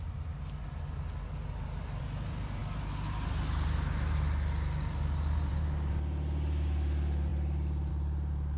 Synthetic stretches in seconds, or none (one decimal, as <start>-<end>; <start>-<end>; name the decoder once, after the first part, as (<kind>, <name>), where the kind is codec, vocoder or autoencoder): none